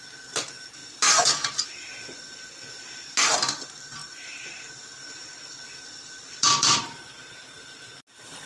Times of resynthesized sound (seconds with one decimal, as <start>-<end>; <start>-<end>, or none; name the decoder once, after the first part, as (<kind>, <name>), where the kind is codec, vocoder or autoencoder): 4.0-7.9 (vocoder, BigVGAN v2)